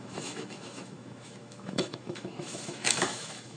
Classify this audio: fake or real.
fake